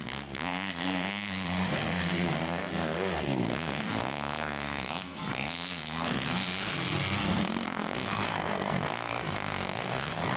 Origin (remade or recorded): remade